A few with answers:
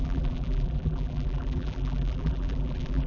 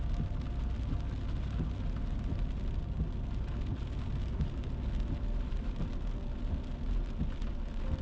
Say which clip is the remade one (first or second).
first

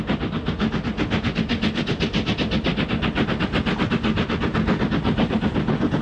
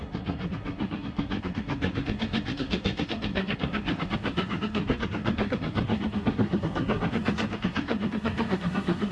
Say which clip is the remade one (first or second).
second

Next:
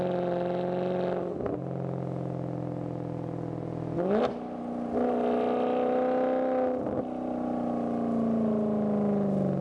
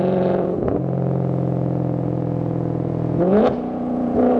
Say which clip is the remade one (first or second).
second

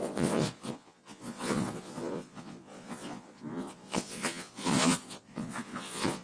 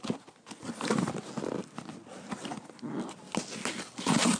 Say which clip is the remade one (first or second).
first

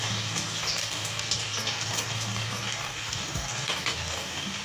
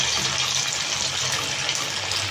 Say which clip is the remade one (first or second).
first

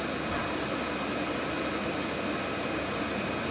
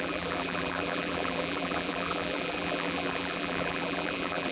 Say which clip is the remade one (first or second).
second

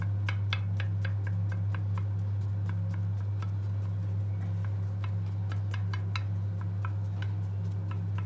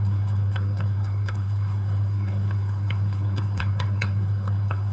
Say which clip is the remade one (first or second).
second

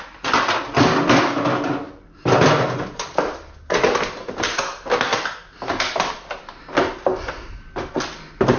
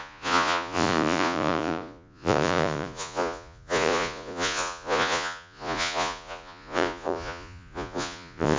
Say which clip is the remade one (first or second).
second